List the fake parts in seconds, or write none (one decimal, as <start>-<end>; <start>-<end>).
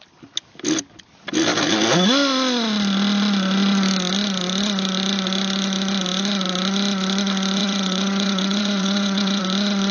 7.6-9.4